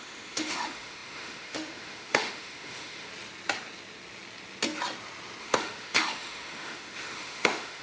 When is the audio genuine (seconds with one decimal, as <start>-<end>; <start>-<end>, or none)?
3.1-5.4